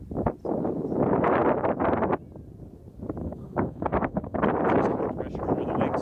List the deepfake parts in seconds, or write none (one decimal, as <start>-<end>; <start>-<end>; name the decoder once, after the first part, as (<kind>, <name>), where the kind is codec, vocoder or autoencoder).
3.2-4.4 (codec, SNAC)